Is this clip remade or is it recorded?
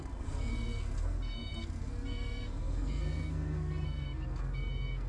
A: remade